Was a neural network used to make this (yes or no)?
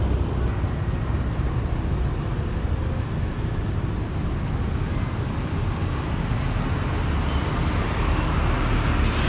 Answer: no